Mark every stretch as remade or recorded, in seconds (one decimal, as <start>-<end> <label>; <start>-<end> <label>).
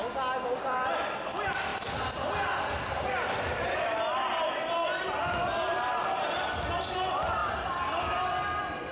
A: 0.0-8.9 recorded